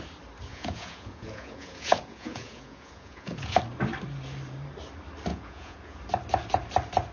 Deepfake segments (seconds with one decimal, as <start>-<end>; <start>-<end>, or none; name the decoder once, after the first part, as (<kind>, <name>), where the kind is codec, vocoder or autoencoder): 0.5-3.6 (vocoder, Vocos); 5.3-6.0